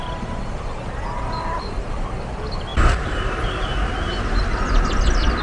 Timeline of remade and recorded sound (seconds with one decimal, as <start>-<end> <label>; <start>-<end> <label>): 0.0-5.4 recorded